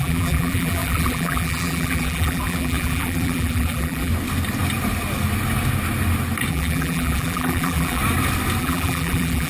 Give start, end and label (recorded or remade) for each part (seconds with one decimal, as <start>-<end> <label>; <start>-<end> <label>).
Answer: 0.0-4.1 remade; 4.1-6.5 recorded; 6.5-8.0 remade; 8.0-8.6 recorded; 8.6-9.5 remade